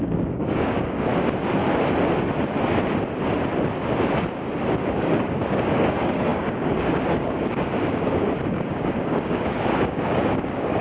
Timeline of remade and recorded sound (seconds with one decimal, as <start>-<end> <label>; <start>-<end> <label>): 0.0-1.1 remade; 1.1-4.8 recorded; 4.8-10.8 remade